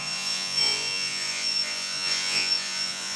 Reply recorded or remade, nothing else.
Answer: remade